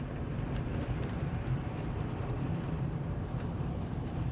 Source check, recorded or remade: remade